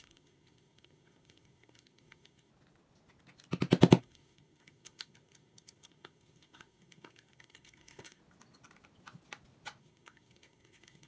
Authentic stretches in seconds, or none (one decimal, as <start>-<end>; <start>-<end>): 2.5-4.0; 8.2-9.8